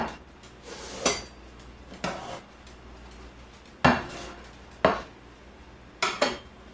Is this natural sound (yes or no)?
yes